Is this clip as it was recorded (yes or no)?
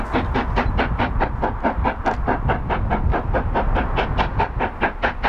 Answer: yes